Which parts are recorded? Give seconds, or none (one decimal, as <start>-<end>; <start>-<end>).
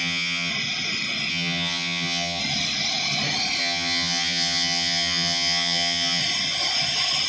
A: 0.5-1.3; 2.4-3.6; 6.2-7.3